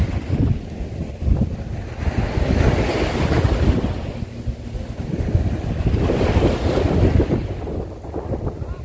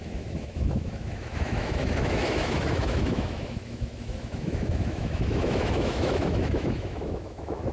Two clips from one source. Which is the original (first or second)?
first